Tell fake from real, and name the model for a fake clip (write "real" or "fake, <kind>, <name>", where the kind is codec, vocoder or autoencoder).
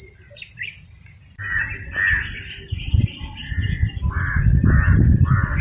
real